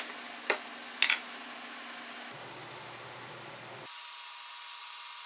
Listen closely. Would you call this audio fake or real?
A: real